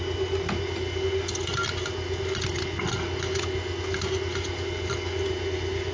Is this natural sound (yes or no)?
yes